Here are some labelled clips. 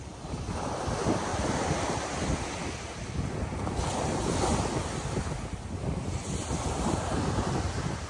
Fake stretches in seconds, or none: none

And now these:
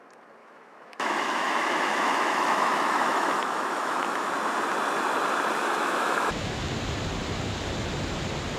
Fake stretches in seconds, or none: 0.4-4.3 (autoencoder, DAC-VAE); 5.6-6.6

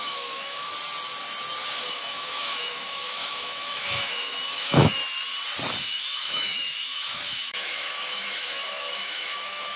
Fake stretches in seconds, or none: 0.0-0.7 (autoencoder, DAC-VAE); 1.8-5.0; 5.8-9.8

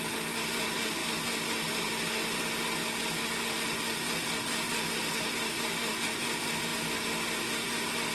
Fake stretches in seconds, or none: none

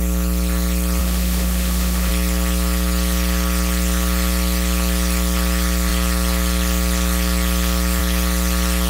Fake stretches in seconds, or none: 1.0-2.1 (autoencoder, DAC-VAE)

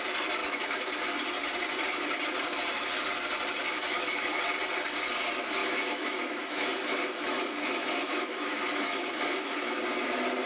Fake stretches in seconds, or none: 0.4-0.9 (autoencoder, DAC-VAE); 3.6-4.4; 5.6-9.8

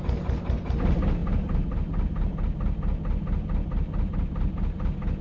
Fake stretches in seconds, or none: none